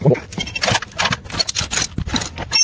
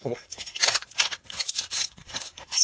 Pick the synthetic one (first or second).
second